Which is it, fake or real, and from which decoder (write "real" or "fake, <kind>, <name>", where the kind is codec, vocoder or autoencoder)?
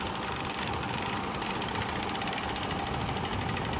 real